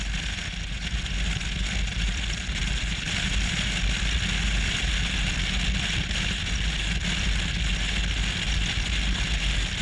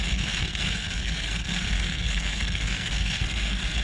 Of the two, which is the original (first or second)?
first